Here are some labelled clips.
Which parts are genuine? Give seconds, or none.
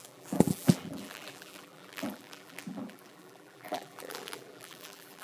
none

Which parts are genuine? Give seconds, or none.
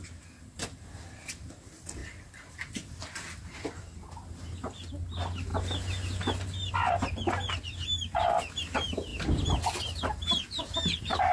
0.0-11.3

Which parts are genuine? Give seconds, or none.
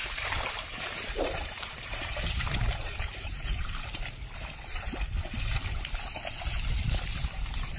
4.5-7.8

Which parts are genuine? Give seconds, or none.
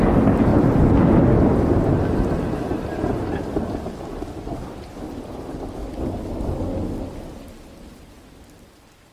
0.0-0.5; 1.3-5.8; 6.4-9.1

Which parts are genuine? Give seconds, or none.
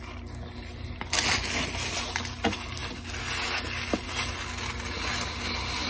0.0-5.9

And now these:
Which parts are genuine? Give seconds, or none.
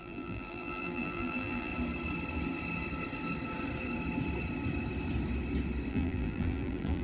1.7-5.9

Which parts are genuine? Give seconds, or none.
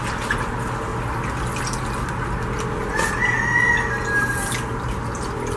0.0-5.6